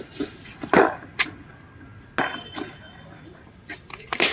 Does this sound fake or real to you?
real